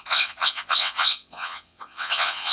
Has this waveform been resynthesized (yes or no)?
yes